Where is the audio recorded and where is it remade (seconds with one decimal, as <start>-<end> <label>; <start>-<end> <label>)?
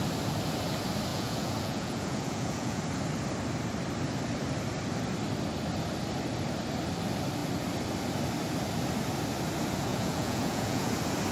0.0-1.1 recorded; 1.1-2.8 remade; 2.8-9.9 recorded; 9.9-10.9 remade; 10.9-11.3 recorded